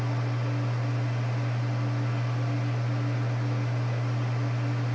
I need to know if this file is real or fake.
real